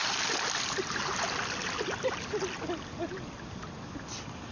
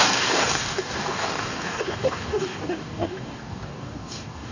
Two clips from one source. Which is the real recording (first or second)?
first